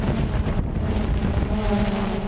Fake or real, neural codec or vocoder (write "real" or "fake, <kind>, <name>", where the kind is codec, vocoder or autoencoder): fake, vocoder, BigVGAN v2